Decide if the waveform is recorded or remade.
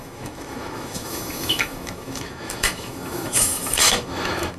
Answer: remade